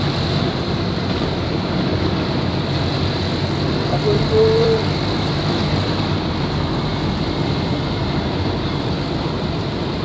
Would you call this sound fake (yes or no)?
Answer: yes